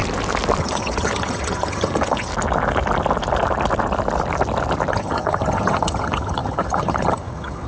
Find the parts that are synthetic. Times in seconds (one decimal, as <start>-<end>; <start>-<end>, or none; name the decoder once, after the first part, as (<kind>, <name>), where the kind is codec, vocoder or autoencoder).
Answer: 0.6-2.3 (vocoder, HiFi-GAN); 4.9-7.7